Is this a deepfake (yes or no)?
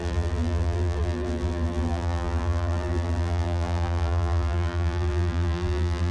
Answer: yes